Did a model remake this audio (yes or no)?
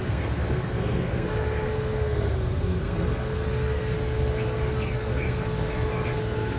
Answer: yes